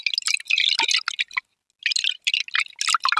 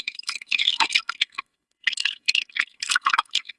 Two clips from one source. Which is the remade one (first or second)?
second